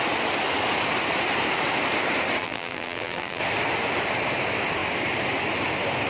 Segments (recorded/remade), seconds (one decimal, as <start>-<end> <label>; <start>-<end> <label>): 0.0-2.4 recorded; 2.4-3.4 remade; 3.4-6.1 recorded

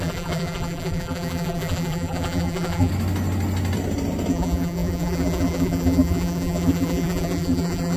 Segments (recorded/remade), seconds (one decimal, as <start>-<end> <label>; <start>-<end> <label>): 0.0-2.9 remade; 2.9-4.3 recorded; 4.3-8.0 remade